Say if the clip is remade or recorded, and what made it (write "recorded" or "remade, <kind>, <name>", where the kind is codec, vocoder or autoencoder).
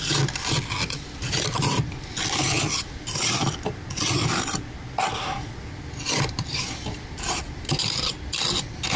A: recorded